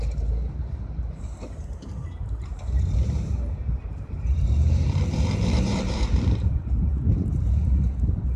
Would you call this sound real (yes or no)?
no